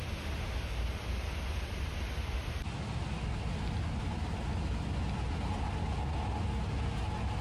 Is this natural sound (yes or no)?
yes